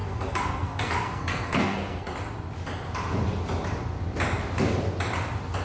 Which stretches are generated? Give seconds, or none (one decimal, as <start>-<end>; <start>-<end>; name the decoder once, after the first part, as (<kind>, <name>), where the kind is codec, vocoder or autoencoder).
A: 0.0-2.1 (codec, SNAC)